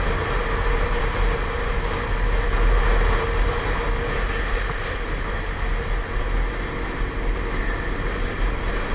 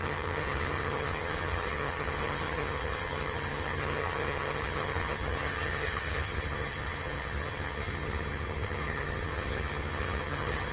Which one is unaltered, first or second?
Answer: first